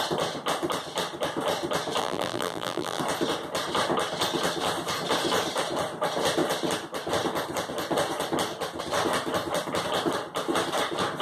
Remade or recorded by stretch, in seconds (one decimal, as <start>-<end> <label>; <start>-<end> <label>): 0.0-2.0 recorded; 2.0-3.0 remade; 3.0-11.2 recorded

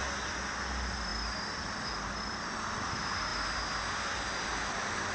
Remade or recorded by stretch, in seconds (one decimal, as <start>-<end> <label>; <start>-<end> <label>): 0.0-5.1 recorded

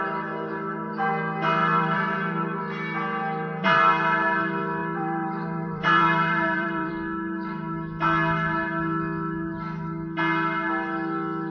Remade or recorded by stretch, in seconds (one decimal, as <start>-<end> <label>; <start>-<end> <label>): 0.0-1.6 recorded; 1.6-2.6 remade; 2.6-4.8 recorded; 4.8-6.9 remade; 6.9-11.5 recorded